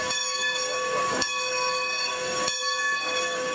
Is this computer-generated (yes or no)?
yes